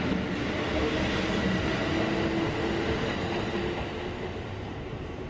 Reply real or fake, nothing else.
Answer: real